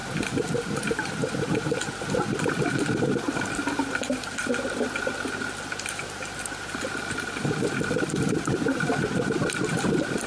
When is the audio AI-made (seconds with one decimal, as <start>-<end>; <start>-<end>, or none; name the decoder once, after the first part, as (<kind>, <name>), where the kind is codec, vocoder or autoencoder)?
0.5-1.2 (vocoder, BigVGAN v2); 3.4-10.3